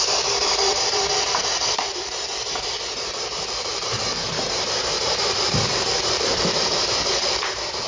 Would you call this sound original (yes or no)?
no